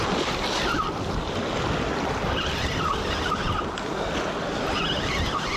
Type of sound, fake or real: real